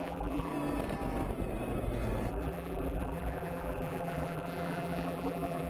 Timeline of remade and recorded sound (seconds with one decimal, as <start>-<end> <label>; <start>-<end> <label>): 0.0-0.5 remade; 0.5-2.3 recorded; 2.3-5.7 remade